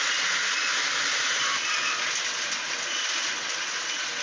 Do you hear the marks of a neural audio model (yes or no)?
no